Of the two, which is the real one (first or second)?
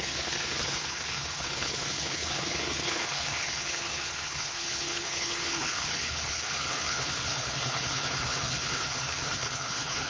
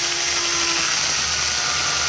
second